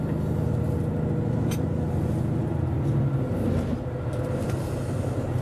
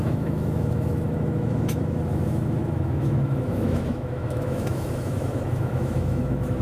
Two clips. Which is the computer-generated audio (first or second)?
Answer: second